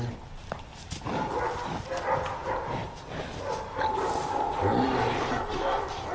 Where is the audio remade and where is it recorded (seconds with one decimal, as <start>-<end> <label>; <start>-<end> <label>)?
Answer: 0.0-6.1 recorded